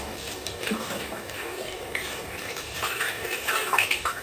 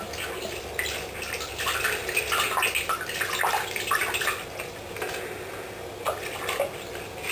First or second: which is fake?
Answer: first